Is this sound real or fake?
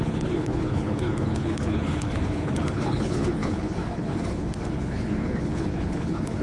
fake